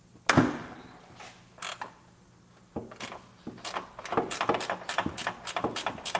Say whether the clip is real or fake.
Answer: real